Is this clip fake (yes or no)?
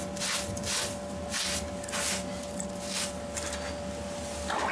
no